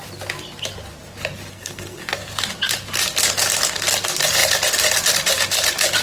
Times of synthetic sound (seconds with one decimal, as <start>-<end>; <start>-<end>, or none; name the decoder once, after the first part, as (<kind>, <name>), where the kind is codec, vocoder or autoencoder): 1.5-2.3 (codec, SNAC)